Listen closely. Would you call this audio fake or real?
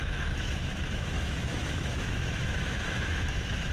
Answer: fake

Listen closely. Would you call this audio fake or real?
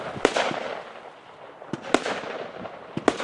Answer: real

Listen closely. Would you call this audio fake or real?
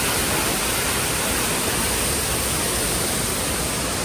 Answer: real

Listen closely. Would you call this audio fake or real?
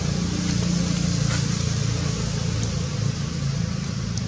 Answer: real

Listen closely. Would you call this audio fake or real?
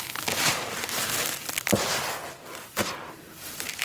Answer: real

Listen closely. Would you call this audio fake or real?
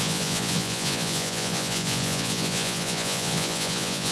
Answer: fake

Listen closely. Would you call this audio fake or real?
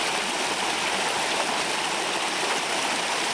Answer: real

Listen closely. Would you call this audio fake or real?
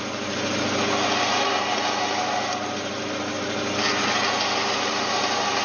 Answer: real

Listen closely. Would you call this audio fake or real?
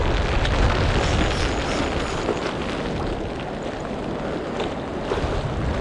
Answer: real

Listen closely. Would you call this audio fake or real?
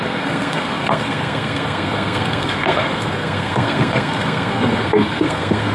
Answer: fake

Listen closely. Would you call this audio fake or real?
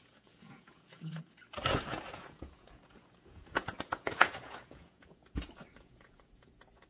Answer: fake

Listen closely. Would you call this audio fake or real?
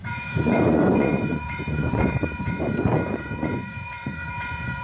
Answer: fake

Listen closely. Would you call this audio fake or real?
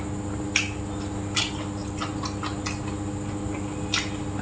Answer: real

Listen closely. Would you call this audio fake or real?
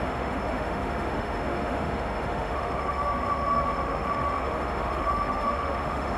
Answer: fake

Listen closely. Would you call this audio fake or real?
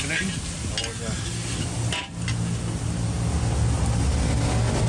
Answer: real